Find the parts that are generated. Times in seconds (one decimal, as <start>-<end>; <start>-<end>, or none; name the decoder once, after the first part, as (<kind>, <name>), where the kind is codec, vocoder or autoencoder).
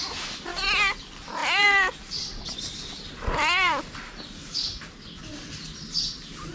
1.4-5.2 (vocoder, BigVGAN v2)